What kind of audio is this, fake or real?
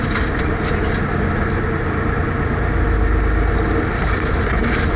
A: real